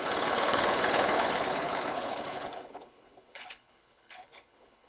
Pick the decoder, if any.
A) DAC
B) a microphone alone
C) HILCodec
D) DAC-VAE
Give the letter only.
C